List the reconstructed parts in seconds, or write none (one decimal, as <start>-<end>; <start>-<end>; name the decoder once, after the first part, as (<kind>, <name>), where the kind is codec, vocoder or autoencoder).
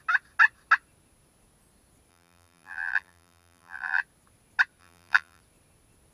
2.1-4.0 (vocoder, BigVGAN v2); 4.8-5.4